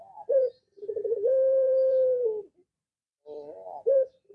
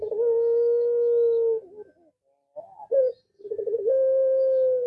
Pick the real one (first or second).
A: second